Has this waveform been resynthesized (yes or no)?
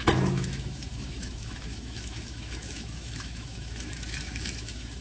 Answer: yes